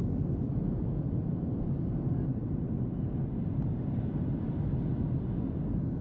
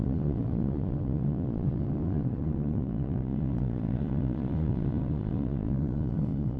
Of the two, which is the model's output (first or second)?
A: second